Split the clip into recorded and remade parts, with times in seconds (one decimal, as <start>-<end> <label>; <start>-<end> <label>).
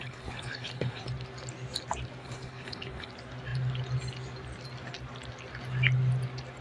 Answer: 0.0-1.0 remade; 1.0-2.2 recorded; 2.2-3.1 remade; 3.1-6.6 recorded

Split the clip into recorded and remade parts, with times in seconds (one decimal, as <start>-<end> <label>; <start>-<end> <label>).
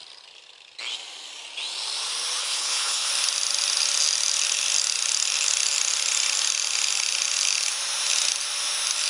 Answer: 0.0-2.4 recorded; 2.4-3.1 remade; 3.1-9.1 recorded